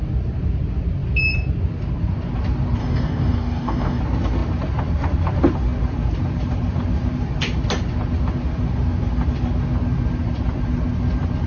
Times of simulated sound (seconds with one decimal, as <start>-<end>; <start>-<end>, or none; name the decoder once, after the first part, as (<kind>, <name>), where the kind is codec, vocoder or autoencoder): 2.8-4.0 (codec, DAC)